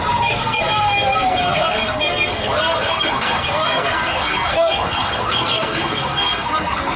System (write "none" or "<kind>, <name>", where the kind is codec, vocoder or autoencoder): codec, SNAC